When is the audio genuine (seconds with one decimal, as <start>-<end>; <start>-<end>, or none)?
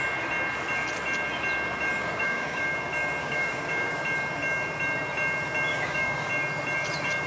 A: 0.0-2.0; 2.6-3.2; 4.0-5.7; 6.3-7.3